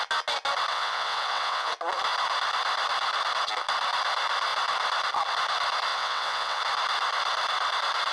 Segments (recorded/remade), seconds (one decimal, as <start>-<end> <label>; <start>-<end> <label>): 0.0-0.7 recorded; 0.7-1.7 remade; 1.7-5.9 recorded; 5.9-6.6 remade; 6.6-8.1 recorded